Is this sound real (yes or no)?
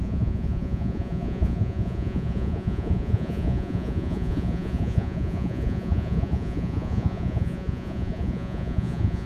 no